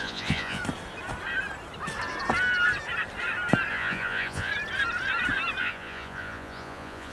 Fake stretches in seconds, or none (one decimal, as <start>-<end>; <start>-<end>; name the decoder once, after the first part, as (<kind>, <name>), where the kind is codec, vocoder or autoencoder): 0.0-0.6 (vocoder, Vocos); 3.7-4.5; 5.6-7.1